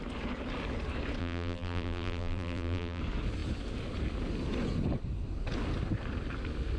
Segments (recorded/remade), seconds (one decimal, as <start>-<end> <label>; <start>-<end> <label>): 0.0-1.2 recorded; 1.2-3.0 remade; 3.0-6.8 recorded